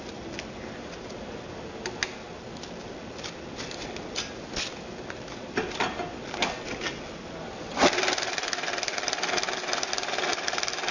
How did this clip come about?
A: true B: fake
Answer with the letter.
A